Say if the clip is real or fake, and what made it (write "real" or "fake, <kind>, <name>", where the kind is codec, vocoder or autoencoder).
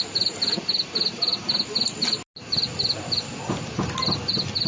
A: real